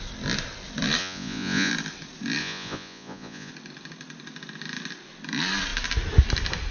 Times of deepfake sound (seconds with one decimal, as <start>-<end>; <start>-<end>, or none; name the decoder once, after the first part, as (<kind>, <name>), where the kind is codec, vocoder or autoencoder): 1.0-1.7 (vocoder, Vocos); 2.4-3.5